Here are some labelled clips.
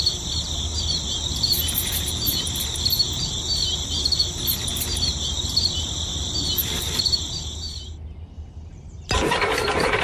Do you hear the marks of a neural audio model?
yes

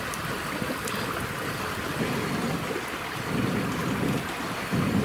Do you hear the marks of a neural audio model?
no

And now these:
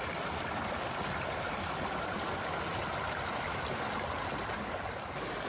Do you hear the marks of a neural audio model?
no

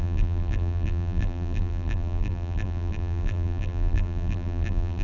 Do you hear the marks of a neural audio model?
yes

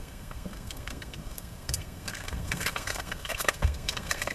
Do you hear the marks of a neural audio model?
yes